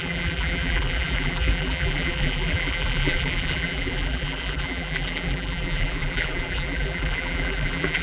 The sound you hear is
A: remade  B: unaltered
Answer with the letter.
A